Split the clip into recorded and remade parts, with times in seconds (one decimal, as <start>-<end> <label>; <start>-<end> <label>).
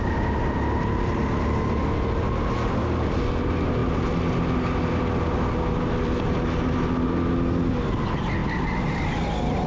0.0-9.7 recorded